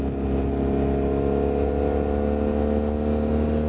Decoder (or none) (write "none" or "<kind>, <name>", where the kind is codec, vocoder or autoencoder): none